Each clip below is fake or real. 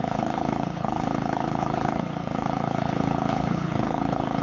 fake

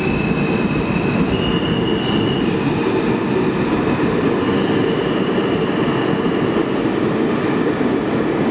real